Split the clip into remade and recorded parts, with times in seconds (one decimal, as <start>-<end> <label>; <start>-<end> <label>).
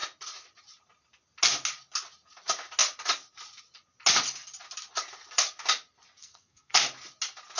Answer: 0.0-6.2 recorded; 6.2-6.8 remade; 6.8-7.6 recorded